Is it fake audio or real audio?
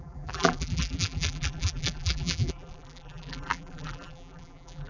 fake